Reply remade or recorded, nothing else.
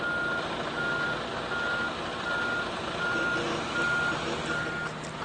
recorded